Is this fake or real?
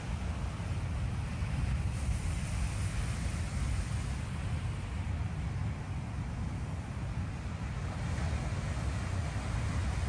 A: real